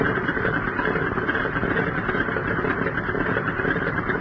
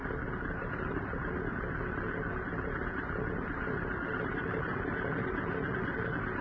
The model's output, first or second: first